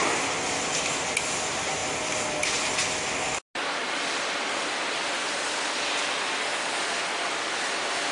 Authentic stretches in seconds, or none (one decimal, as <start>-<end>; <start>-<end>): 0.0-8.1